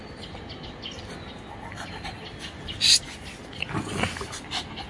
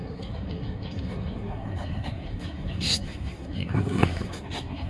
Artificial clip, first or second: second